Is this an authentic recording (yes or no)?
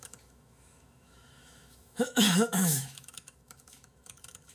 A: no